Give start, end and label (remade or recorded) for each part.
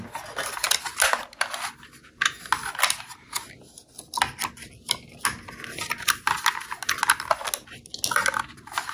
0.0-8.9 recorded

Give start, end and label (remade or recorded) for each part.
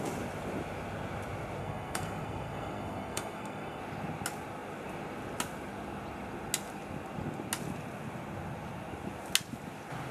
0.0-1.6 recorded; 1.6-3.8 remade; 3.8-10.1 recorded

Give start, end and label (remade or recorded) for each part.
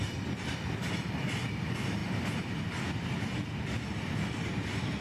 0.0-5.0 recorded